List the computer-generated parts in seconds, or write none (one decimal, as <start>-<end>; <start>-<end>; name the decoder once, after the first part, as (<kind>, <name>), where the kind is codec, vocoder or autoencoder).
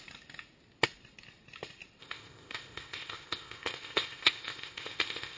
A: 2.0-5.4 (codec, ZipCodec)